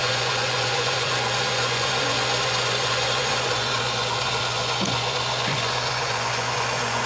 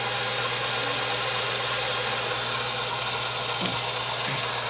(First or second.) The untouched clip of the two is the second